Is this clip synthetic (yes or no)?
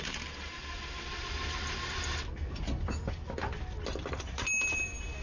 no